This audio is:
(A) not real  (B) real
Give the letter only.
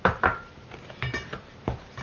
A